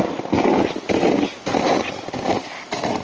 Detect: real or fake real